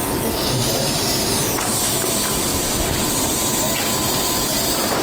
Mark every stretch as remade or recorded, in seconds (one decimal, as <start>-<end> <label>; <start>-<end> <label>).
0.0-0.7 recorded; 0.7-1.4 remade; 1.4-2.1 recorded; 2.1-2.5 remade; 2.5-3.0 recorded; 3.0-3.4 remade; 3.4-4.0 recorded; 4.0-5.0 remade